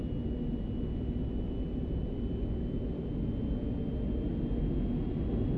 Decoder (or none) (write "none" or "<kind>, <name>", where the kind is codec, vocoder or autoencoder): none